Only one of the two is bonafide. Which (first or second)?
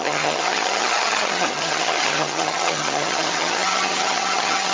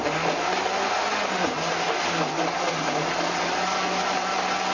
second